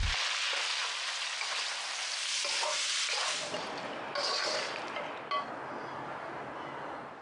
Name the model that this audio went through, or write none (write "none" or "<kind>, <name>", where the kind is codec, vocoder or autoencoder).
none